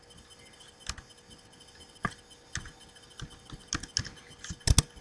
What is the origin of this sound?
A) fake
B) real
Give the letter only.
B